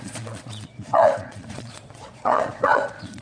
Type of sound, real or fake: fake